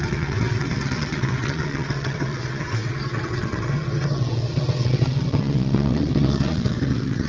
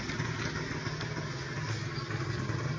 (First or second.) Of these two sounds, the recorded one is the second